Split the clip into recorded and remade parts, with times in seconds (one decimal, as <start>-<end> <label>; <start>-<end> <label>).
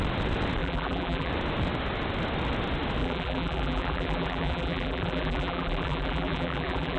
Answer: 0.0-0.6 recorded; 0.6-1.3 remade; 1.3-3.0 recorded; 3.0-7.0 remade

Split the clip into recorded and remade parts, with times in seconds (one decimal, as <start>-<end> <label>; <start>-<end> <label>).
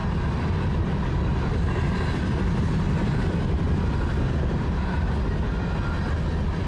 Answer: 0.0-6.7 recorded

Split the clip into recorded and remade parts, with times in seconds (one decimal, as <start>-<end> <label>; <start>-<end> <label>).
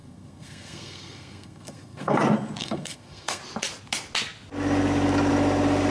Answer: 0.0-2.2 remade; 2.2-2.6 recorded; 2.6-3.4 remade; 3.4-5.9 recorded